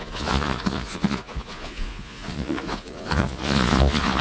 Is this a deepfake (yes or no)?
yes